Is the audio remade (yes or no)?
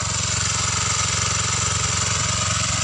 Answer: no